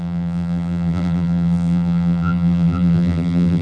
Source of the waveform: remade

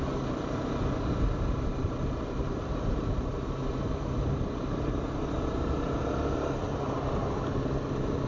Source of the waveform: remade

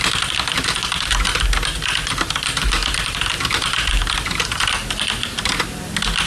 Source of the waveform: recorded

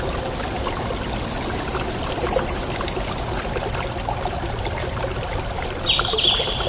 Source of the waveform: recorded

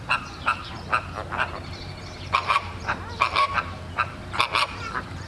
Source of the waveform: remade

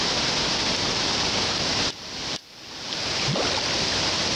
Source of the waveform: remade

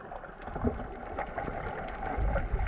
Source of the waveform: recorded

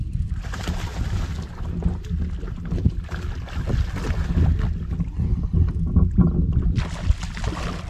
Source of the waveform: recorded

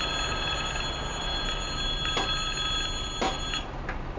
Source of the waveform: recorded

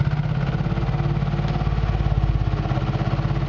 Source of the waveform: recorded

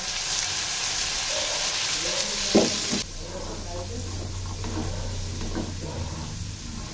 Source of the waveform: recorded